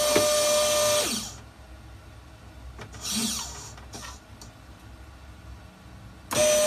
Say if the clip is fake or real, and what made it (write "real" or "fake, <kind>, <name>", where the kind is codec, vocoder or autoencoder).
real